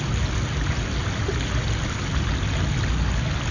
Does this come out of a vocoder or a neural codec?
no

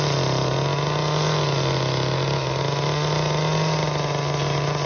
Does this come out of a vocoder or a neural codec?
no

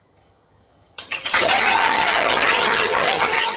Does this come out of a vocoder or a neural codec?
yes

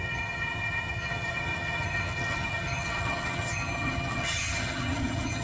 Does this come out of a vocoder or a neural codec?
yes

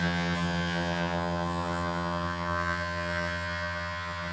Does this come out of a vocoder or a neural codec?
yes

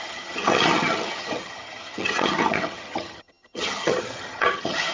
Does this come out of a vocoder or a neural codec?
yes